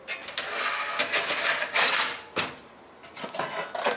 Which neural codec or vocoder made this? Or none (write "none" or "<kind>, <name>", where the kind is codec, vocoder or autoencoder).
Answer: none